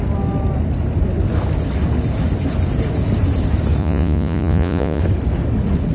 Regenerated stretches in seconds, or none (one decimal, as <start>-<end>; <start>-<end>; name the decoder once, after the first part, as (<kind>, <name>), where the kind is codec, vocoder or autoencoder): 3.8-5.0 (vocoder, Vocos)

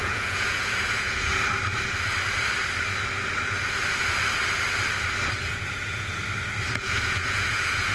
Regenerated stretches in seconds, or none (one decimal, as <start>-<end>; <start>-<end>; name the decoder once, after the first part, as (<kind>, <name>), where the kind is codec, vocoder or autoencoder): 0.0-1.3 (vocoder, Vocos); 5.5-6.2; 6.7-7.9

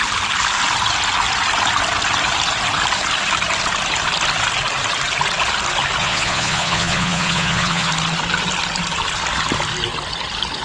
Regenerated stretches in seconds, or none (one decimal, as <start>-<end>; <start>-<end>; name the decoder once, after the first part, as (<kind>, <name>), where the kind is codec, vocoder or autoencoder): 6.0-7.9 (vocoder, Vocos)

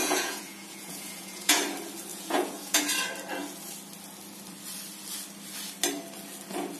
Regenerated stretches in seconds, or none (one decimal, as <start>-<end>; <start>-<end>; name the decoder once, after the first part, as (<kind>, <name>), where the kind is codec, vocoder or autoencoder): 0.0-1.6 (vocoder, Vocos); 2.1-2.8

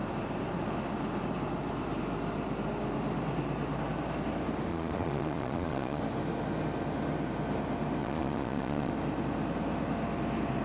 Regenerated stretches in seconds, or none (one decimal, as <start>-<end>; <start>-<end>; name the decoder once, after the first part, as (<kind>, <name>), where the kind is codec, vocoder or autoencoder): 4.7-6.0 (vocoder, Vocos); 8.0-8.9

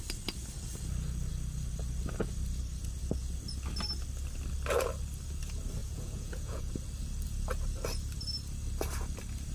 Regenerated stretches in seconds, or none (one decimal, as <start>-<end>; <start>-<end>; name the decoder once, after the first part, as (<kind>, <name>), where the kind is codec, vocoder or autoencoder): 5.8-6.7 (vocoder, Vocos)